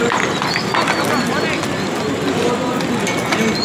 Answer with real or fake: real